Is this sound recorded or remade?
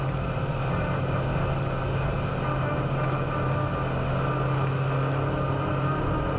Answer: recorded